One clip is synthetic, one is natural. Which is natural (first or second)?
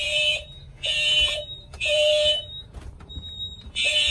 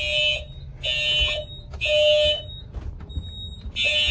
second